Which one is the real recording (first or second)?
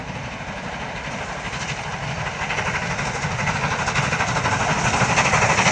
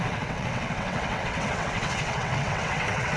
first